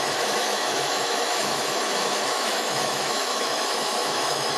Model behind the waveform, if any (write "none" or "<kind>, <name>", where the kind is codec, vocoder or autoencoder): autoencoder, DAC-VAE